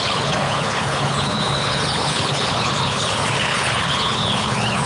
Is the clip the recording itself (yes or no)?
no